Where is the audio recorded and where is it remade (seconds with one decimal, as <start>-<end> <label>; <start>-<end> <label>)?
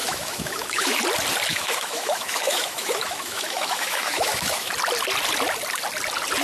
0.0-1.0 remade; 1.0-1.5 recorded; 1.5-4.7 remade; 4.7-6.4 recorded